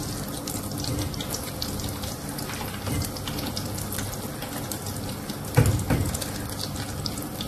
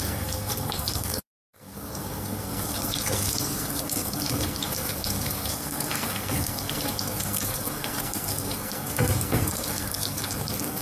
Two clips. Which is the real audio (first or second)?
first